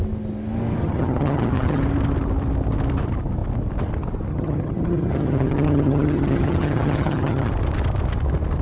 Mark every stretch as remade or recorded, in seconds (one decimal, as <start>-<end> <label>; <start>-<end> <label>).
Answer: 0.0-0.8 recorded; 0.8-1.8 remade; 1.8-4.3 recorded; 4.3-7.5 remade; 7.5-8.6 recorded

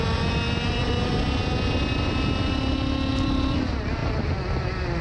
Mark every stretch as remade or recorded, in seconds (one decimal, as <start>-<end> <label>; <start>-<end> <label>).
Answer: 0.0-3.1 recorded; 3.1-3.6 remade; 3.6-5.0 recorded

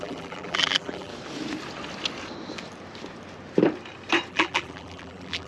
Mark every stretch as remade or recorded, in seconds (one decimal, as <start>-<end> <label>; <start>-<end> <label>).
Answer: 0.0-1.1 remade; 1.1-4.3 recorded; 4.3-5.5 remade

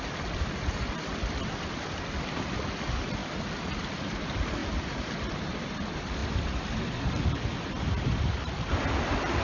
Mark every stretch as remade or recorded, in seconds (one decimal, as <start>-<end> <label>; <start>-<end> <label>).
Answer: 0.0-9.4 remade

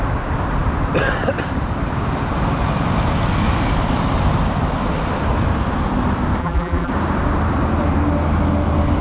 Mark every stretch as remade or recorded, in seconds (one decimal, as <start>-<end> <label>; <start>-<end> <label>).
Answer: 0.0-6.4 recorded; 6.4-6.9 remade; 6.9-9.0 recorded

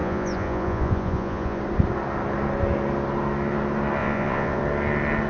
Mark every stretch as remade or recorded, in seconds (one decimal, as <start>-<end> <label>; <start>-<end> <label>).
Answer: 0.0-1.6 remade; 1.6-4.0 recorded; 4.0-4.6 remade; 4.6-5.3 recorded